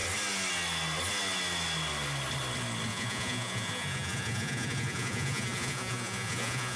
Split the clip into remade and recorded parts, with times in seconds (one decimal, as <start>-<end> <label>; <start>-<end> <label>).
0.0-2.9 recorded; 2.9-6.8 remade